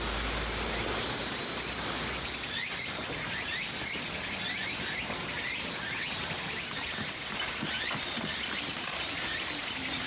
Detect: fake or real real